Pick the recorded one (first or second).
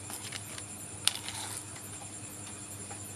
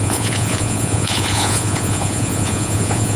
first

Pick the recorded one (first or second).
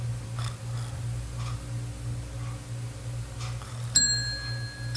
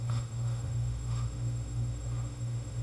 first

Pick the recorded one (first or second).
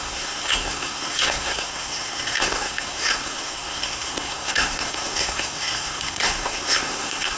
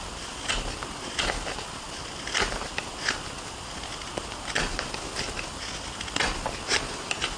second